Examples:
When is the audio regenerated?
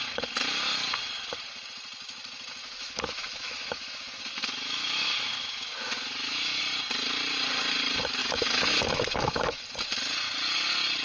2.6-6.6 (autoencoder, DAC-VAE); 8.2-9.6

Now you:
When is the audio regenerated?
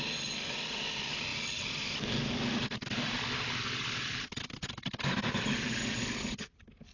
none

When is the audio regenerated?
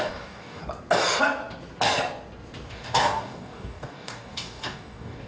0.0-0.6 (codec, DAC); 2.7-5.3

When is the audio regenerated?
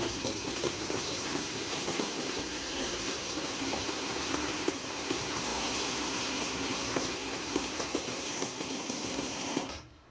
0.0-10.1 (codec, SNAC)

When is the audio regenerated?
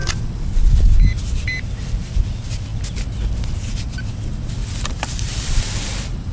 4.6-5.6 (vocoder, BigVGAN v2)